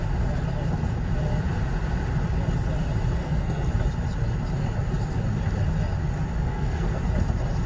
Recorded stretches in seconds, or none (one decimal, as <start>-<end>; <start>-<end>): 0.0-3.2; 3.7-6.4; 7.0-7.7